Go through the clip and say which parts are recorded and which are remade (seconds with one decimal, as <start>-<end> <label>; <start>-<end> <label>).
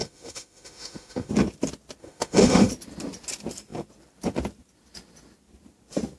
0.0-1.3 remade; 1.3-2.0 recorded; 2.0-2.7 remade; 2.7-6.2 recorded